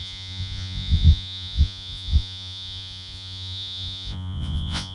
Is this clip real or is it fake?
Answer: fake